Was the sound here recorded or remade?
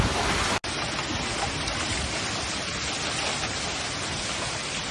recorded